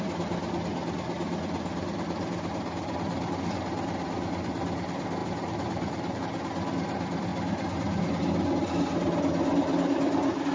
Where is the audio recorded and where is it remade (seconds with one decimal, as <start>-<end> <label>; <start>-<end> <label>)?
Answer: 0.0-5.2 recorded; 5.2-6.2 remade; 6.2-10.5 recorded